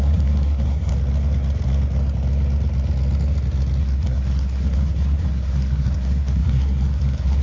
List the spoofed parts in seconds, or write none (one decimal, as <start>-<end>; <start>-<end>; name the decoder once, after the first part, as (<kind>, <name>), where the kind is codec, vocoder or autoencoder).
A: 0.0-0.9 (codec, SNAC); 3.8-7.4